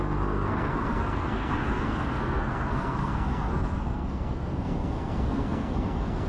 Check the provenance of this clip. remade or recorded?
remade